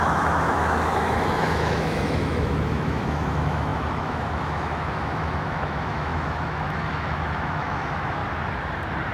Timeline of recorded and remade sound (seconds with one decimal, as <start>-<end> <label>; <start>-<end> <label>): 0.0-8.2 remade; 8.2-9.1 recorded